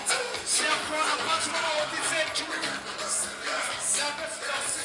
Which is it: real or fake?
real